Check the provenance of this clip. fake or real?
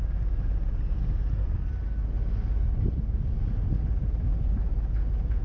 real